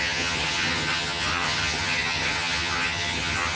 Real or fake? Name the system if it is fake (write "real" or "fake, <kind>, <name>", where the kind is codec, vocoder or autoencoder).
fake, vocoder, HiFi-GAN